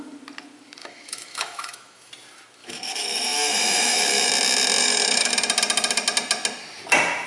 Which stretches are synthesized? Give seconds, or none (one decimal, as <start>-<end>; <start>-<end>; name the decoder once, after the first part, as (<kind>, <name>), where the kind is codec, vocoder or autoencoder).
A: 0.8-2.1 (autoencoder, DAC-VAE); 2.6-4.3; 4.8-5.3